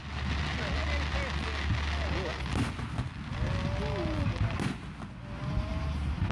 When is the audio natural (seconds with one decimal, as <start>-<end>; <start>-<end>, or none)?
0.0-6.3